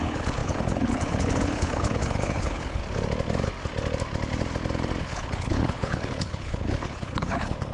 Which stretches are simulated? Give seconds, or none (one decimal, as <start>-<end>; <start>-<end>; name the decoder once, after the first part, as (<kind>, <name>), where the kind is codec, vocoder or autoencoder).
0.0-2.8 (codec, HILCodec); 5.0-7.7